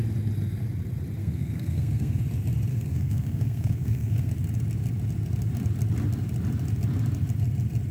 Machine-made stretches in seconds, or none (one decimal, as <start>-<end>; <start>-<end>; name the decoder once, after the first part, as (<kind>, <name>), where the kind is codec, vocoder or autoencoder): 1.2-2.2 (codec, SNAC); 2.7-4.3